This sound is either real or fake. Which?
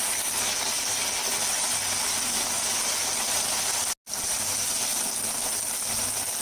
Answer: real